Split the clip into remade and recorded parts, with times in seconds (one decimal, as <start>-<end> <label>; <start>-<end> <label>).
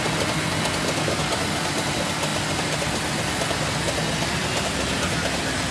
0.0-5.7 recorded